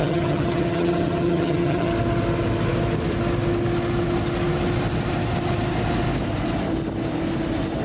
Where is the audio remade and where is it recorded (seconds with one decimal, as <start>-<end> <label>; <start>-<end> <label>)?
0.0-1.9 remade; 1.9-7.8 recorded